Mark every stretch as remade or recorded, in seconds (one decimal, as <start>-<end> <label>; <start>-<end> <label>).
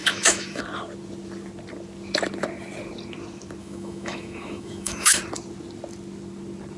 0.0-0.6 remade; 0.6-3.6 recorded; 3.6-5.2 remade; 5.2-6.8 recorded